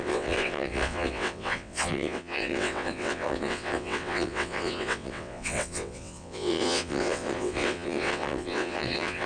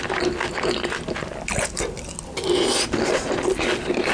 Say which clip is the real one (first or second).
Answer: second